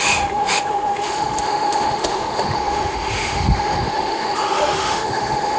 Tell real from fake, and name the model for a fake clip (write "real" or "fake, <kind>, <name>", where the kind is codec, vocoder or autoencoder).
fake, autoencoder, DAC-VAE